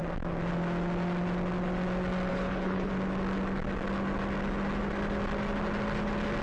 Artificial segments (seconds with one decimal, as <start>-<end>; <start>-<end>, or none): 2.3-2.9